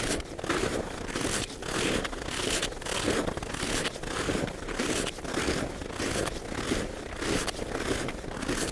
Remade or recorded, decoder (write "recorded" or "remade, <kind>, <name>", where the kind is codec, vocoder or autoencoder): recorded